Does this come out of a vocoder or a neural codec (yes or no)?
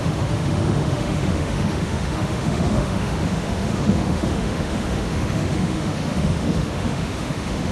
yes